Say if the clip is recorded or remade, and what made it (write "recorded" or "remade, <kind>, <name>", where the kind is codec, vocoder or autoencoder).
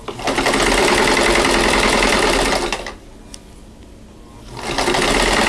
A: recorded